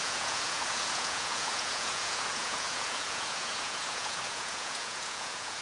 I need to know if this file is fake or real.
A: fake